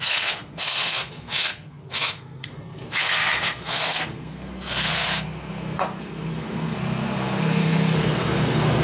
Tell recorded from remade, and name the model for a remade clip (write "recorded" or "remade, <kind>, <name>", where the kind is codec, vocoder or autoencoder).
remade, codec, SNAC